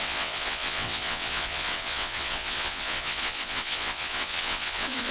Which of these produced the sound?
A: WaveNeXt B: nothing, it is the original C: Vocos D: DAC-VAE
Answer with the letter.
A